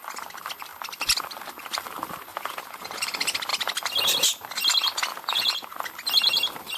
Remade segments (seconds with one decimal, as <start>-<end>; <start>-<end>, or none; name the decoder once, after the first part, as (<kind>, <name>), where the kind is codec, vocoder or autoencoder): 2.3-3.0 (vocoder, Vocos); 5.1-5.7